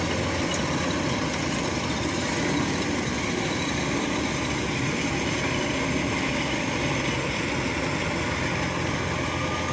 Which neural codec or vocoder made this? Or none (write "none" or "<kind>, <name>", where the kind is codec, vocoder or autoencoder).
none